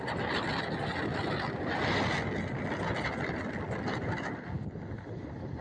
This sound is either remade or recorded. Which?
recorded